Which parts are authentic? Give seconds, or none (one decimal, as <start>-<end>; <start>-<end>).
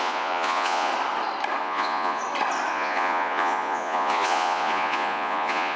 0.9-1.6; 2.2-2.7